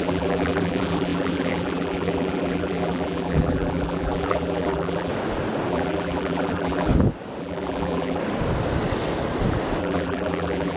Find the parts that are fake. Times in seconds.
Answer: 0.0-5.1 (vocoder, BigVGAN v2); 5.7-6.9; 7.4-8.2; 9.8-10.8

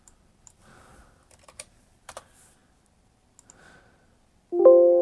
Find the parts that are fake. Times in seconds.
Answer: 0.0-2.6 (vocoder, BigVGAN v2)

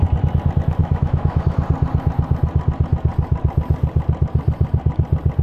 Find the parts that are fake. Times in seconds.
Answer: 0.8-1.4 (autoencoder, DAC-VAE)